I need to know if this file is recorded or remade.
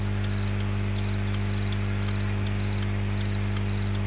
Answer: recorded